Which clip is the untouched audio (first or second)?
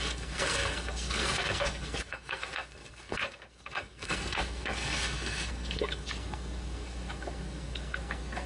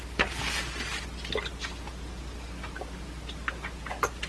second